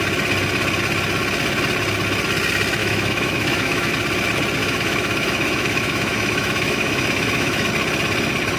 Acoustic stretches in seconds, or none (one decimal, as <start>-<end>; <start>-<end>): 0.0-2.8; 3.9-4.6; 7.7-8.6